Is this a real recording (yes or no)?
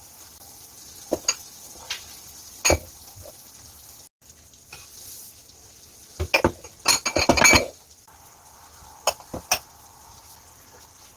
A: yes